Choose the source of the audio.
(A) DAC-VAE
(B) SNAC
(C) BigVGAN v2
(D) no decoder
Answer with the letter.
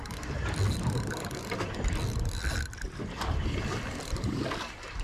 C